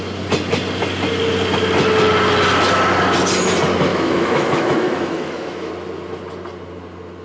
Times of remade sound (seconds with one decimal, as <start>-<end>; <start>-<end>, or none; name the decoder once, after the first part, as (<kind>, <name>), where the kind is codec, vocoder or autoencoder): 3.9-5.7 (autoencoder, DAC-VAE)